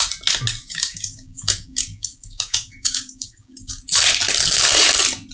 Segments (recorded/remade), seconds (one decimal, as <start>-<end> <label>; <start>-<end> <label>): 0.0-0.6 recorded; 0.6-3.8 remade; 3.8-5.3 recorded